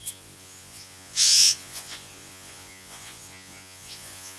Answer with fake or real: fake